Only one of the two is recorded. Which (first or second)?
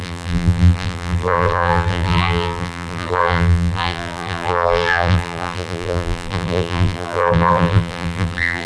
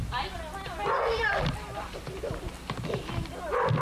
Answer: second